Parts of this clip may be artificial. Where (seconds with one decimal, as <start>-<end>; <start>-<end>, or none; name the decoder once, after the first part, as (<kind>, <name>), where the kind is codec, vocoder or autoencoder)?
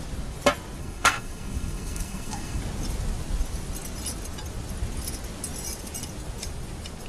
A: 0.8-2.6 (codec, SNAC)